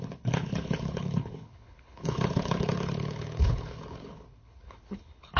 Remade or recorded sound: remade